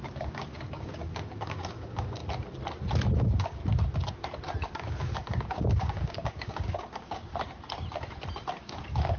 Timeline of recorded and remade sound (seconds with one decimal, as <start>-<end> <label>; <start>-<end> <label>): 0.0-2.2 remade; 2.2-3.2 recorded; 3.2-3.6 remade; 3.6-4.7 recorded; 4.7-7.3 remade; 7.3-8.6 recorded; 8.6-9.2 remade